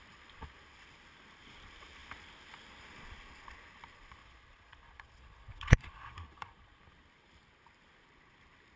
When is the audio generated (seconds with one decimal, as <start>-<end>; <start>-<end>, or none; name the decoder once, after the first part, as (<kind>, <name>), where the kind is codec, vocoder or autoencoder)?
4.2-6.8 (vocoder, Vocos)